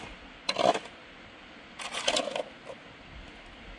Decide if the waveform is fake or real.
real